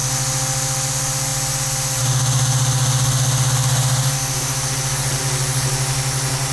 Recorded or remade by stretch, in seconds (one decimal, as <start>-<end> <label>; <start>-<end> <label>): 0.0-6.5 recorded